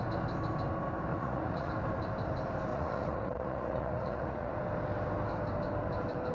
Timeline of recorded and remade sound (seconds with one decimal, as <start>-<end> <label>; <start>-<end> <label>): 0.0-1.1 recorded; 1.1-1.7 remade; 1.7-2.7 recorded; 2.7-4.5 remade; 4.5-6.3 recorded